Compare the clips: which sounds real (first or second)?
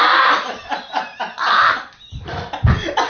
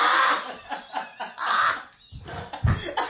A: second